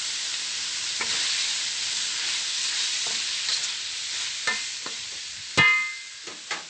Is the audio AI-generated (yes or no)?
no